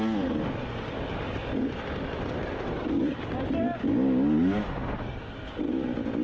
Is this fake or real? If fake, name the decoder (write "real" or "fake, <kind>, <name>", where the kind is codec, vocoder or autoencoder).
real